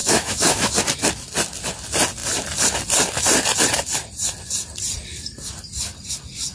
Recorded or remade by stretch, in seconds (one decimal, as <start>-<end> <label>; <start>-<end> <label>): 0.0-0.8 remade; 0.8-6.5 recorded